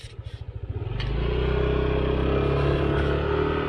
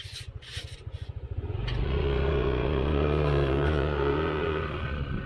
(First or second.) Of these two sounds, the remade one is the second